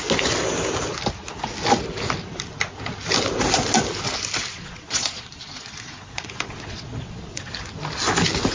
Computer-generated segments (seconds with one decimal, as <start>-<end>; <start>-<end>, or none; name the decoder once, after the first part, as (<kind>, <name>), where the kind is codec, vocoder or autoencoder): 4.5-7.5 (vocoder, Vocos)